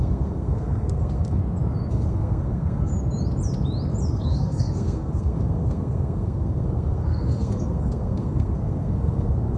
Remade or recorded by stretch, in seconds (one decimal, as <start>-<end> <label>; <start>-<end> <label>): 0.0-1.4 remade; 1.4-1.9 recorded; 1.9-2.9 remade; 2.9-4.1 recorded; 4.1-9.6 remade